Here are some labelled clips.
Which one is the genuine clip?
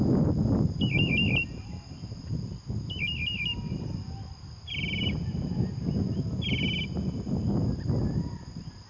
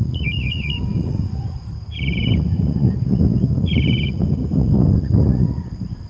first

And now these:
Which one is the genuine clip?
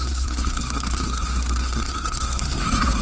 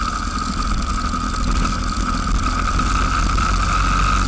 second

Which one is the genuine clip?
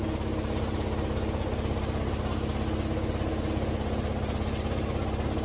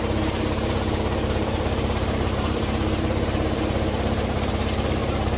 first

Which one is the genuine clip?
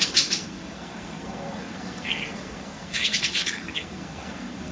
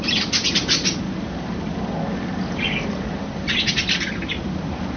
second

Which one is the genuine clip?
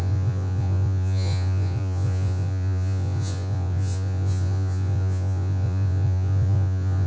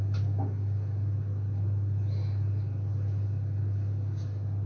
second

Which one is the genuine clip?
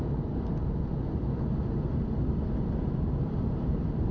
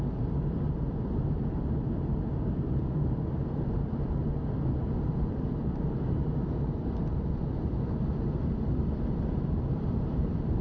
first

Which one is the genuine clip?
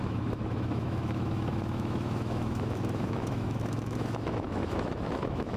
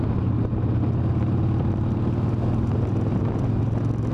second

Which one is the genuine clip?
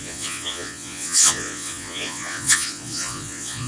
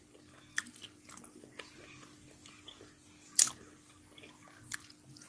second